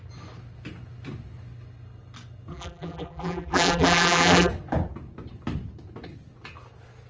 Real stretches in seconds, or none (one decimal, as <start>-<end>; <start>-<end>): 0.0-2.5; 4.5-7.1